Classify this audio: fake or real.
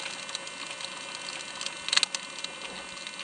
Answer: real